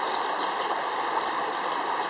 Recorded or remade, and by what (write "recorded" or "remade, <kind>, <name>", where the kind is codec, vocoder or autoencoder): remade, vocoder, BigVGAN v2